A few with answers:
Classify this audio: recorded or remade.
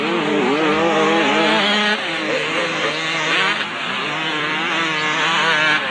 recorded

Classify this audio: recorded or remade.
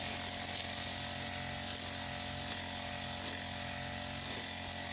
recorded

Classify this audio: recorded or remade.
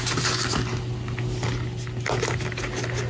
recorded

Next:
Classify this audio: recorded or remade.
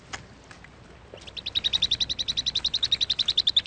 recorded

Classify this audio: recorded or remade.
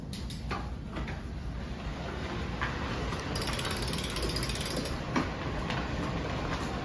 recorded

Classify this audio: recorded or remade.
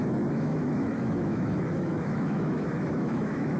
remade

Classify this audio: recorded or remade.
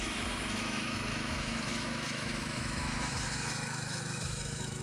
remade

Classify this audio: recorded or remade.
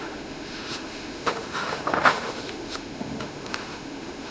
remade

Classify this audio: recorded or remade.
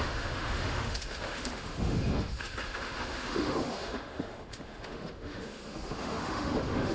remade